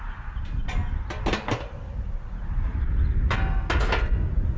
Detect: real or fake real